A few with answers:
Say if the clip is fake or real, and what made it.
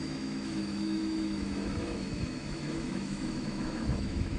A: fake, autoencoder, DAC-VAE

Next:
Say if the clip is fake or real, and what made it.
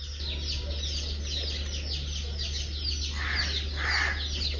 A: real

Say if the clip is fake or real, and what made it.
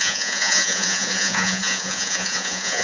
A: fake, vocoder, Vocos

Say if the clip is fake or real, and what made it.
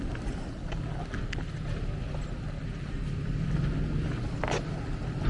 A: real